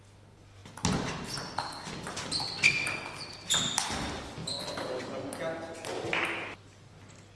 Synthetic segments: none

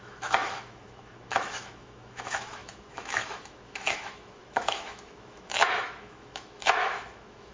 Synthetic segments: 0.0-7.5 (autoencoder, DAC-VAE)

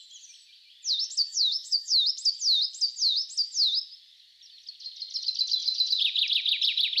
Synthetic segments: 1.3-2.1 (autoencoder, DAC-VAE)

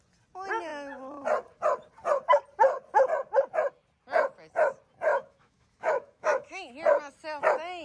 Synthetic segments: 5.1-6.7 (autoencoder, DAC-VAE)

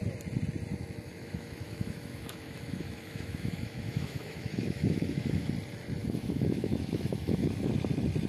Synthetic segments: 0.7-5.5 (autoencoder, DAC-VAE); 6.0-7.7